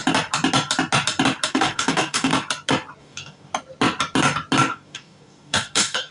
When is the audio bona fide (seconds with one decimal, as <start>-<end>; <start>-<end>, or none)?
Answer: 0.0-1.5; 2.3-3.0; 3.5-4.7